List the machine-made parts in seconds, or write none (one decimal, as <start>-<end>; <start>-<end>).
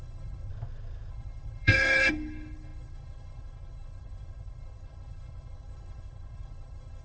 0.0-0.5; 1.1-7.0